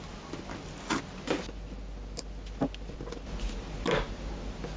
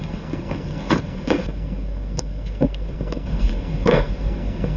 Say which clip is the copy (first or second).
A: second